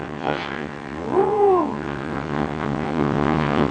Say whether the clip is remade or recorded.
remade